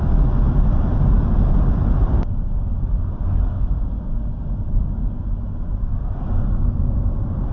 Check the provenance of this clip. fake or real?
real